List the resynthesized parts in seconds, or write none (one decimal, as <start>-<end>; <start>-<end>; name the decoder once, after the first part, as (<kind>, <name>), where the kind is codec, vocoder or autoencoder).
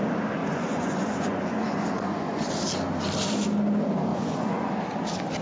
0.4-2.5 (vocoder, Vocos); 4.1-4.7